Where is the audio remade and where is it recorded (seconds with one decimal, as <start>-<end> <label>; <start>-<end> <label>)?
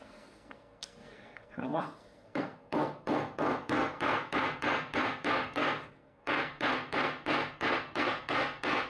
0.0-8.9 remade